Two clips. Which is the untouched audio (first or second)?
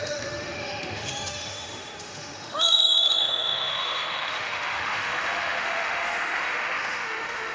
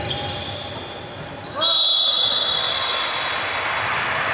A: second